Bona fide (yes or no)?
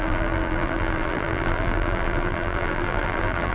no